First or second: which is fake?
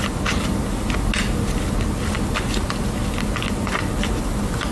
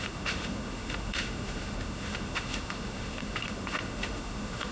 second